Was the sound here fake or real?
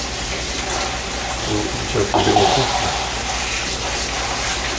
real